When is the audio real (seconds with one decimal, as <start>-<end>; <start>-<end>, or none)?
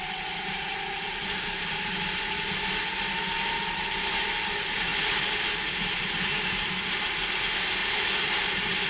4.9-7.0